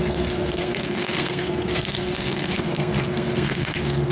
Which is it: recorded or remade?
remade